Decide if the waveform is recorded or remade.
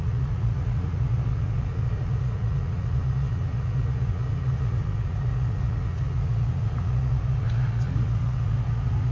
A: remade